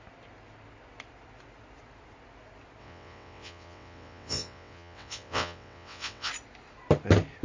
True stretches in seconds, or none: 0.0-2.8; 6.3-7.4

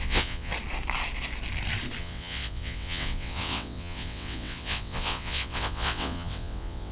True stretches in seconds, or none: 0.5-2.0

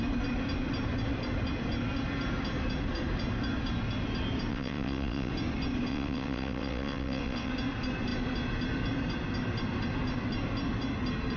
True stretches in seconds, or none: 0.0-4.5; 5.3-5.9; 7.5-11.4

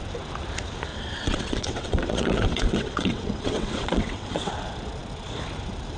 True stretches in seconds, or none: 0.0-0.9; 4.5-6.0

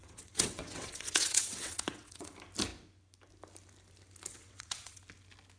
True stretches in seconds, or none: 2.3-4.3; 5.0-5.6